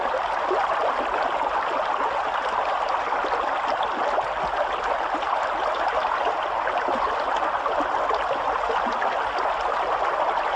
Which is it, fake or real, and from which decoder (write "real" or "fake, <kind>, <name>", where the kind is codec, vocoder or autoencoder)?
real